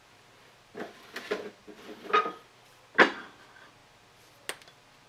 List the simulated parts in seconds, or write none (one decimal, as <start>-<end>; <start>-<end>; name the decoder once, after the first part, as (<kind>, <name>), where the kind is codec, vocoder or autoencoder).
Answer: none